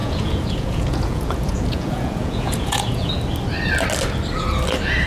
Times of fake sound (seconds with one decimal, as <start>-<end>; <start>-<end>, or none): 0.0-3.1